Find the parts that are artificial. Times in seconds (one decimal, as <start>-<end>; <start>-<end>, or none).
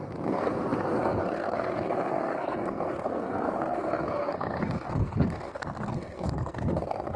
0.0-7.2